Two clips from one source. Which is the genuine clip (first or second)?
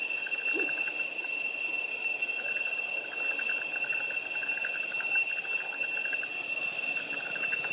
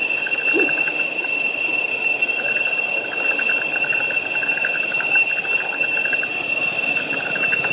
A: first